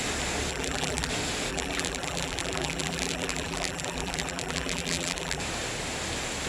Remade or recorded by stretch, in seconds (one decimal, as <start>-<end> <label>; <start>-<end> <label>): 0.0-0.5 recorded; 0.5-1.1 remade; 1.1-1.5 recorded; 1.5-5.4 remade; 5.4-6.5 recorded